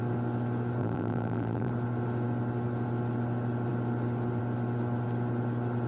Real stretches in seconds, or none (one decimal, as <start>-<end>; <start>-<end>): 0.0-0.8; 1.7-5.9